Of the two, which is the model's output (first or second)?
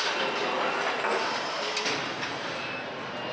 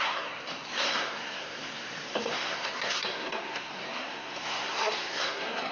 second